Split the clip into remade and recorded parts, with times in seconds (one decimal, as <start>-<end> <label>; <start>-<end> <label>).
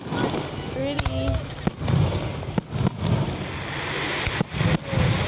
0.0-5.3 recorded